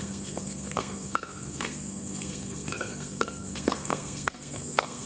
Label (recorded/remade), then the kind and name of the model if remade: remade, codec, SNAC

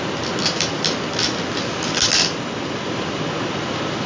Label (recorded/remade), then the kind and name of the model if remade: recorded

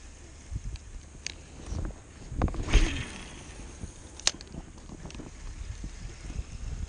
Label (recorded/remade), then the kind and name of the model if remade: recorded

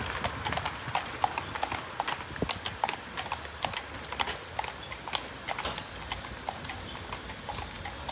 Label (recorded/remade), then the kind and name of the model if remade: recorded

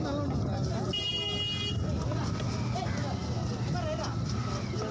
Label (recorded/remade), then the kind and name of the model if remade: recorded